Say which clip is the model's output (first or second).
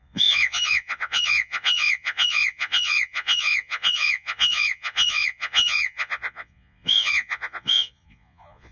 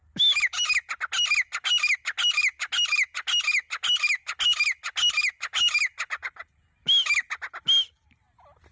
first